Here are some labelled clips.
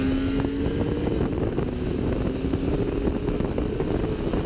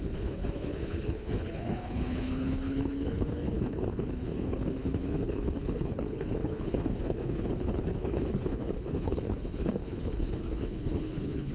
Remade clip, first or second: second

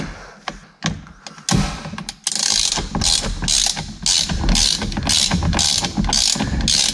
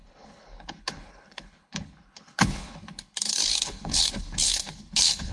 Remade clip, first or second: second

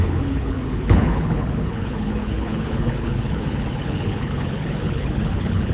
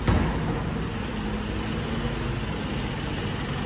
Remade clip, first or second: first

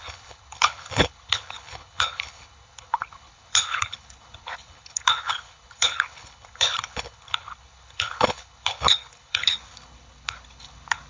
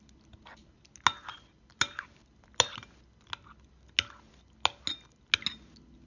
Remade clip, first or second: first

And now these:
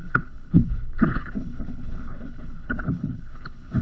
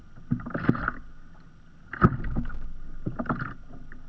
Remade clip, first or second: first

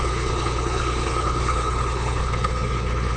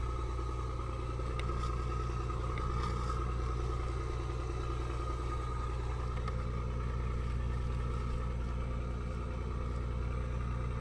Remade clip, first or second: first